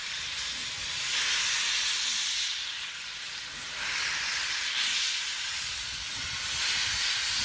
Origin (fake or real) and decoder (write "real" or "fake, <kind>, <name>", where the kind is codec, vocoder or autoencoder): real